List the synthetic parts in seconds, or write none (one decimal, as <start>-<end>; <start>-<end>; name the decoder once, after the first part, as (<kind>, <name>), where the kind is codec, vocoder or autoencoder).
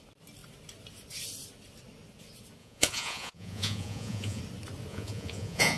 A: 2.6-4.4 (vocoder, Vocos); 4.9-5.8